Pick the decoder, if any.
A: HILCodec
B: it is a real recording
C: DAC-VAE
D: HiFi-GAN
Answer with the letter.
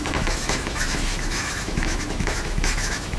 C